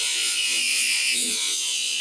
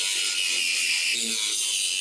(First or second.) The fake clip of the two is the first